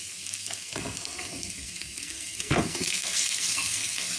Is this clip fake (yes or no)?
yes